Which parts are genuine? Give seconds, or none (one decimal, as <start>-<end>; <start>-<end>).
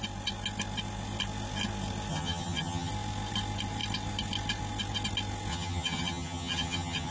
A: 0.0-2.1; 2.9-5.5